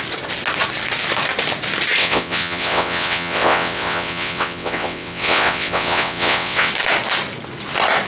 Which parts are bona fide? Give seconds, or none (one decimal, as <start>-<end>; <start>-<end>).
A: 0.0-2.0; 6.7-8.1